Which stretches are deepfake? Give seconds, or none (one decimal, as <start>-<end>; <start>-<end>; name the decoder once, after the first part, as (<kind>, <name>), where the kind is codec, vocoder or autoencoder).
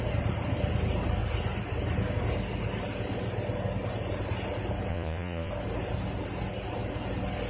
4.9-5.5 (vocoder, Vocos)